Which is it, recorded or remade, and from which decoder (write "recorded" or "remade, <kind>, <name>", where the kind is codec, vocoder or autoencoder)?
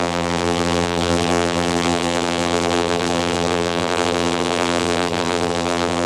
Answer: remade, vocoder, BigVGAN v2